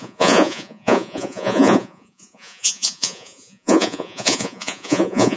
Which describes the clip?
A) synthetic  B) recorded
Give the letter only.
A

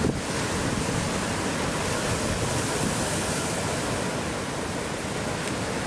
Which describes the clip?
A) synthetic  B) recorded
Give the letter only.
B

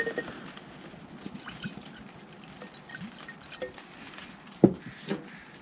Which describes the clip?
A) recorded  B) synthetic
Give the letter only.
A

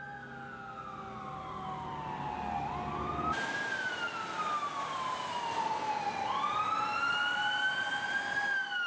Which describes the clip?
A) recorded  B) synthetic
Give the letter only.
A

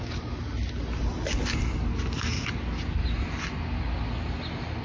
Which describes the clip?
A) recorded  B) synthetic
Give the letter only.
A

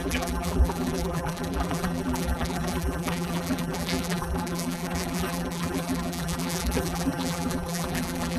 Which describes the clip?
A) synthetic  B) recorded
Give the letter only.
A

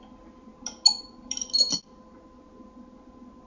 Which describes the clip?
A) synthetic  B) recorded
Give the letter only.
B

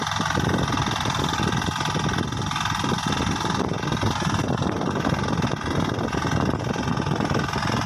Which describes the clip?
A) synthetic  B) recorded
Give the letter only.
A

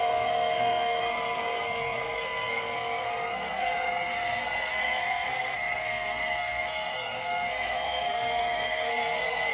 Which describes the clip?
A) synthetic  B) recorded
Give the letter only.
A